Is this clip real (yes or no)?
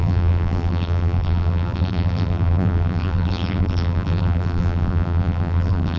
no